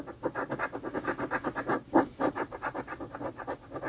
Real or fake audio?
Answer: real